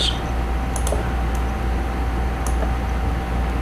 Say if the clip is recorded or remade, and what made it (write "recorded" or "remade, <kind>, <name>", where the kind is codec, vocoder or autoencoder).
recorded